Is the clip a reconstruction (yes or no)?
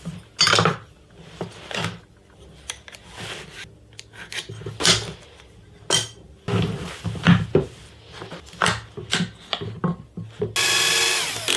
no